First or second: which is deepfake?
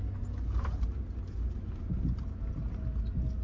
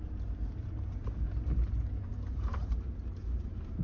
second